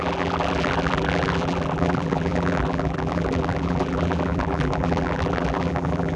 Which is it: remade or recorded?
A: remade